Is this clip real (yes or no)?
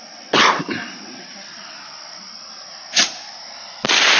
yes